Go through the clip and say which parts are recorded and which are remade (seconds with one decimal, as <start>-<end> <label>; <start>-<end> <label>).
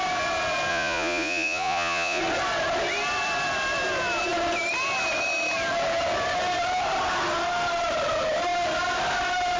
0.0-0.7 recorded; 0.7-2.2 remade; 2.2-9.6 recorded